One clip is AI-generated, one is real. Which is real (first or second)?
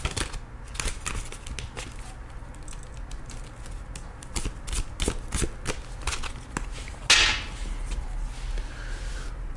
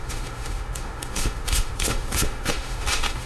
first